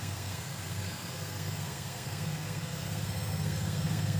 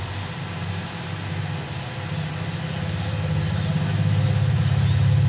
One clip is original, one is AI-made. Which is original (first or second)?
second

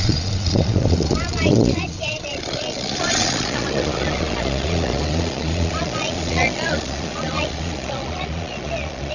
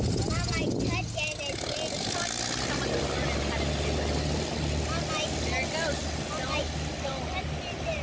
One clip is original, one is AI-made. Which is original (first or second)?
second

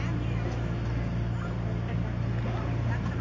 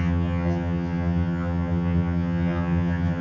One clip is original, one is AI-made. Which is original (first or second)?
first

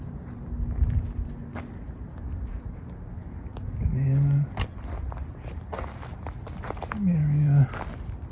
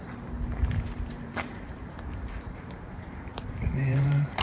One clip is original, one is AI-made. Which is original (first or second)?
first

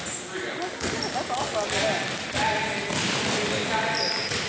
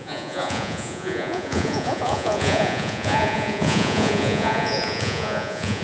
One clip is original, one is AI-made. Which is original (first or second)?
first